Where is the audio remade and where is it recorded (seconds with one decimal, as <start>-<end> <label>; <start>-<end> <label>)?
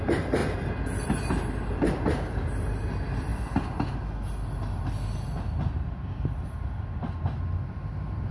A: 0.0-8.3 recorded